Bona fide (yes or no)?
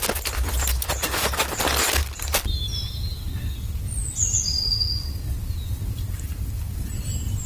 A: yes